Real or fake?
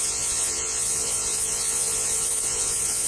fake